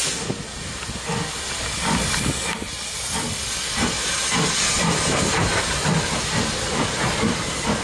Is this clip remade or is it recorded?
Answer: recorded